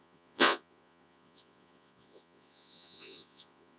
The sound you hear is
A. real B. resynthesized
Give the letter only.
B